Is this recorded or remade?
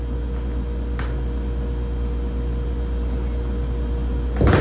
recorded